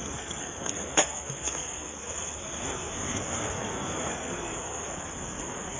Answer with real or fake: fake